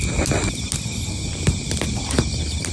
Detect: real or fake real